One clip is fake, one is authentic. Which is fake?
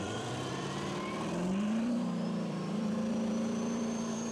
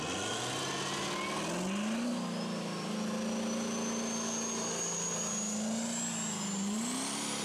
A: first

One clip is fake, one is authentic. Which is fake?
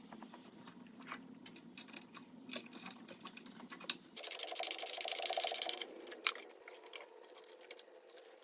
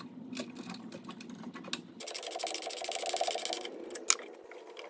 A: first